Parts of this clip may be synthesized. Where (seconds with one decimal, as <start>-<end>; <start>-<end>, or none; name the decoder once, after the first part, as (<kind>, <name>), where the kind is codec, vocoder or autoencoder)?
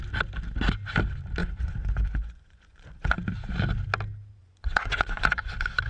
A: 1.4-3.1 (vocoder, Vocos); 4.4-5.9